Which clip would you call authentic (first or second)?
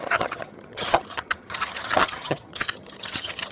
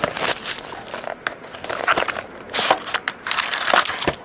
second